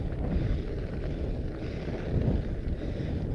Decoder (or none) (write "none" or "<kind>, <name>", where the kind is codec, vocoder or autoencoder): none